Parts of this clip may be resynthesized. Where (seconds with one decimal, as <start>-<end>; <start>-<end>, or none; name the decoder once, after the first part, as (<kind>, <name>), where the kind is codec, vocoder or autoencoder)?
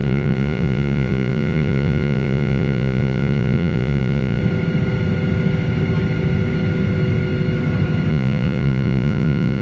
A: 0.0-4.4 (vocoder, Vocos); 8.1-9.6